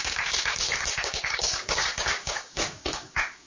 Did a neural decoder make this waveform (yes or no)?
yes